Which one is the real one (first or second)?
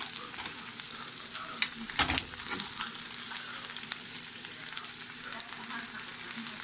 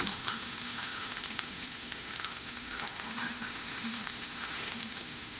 first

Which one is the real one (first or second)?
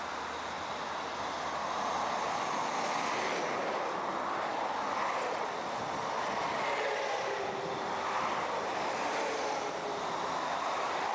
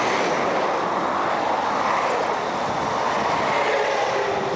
first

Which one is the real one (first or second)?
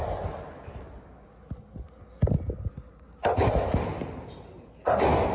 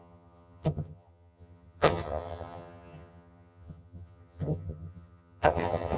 first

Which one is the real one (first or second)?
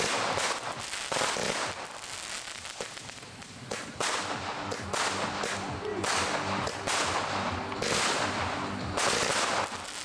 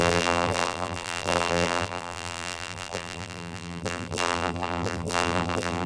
first